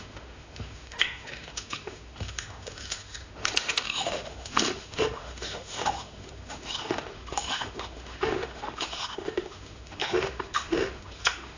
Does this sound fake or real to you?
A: fake